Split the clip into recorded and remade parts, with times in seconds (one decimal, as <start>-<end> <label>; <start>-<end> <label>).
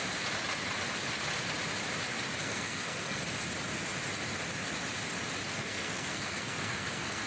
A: 0.0-2.4 recorded; 2.4-3.2 remade; 3.2-5.5 recorded; 5.5-7.3 remade